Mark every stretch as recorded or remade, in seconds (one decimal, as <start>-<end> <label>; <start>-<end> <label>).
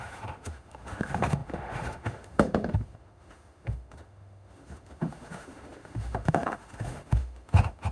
0.0-7.9 remade